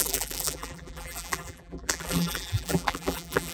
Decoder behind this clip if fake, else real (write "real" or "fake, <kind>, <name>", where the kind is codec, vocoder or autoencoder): fake, vocoder, BigVGAN v2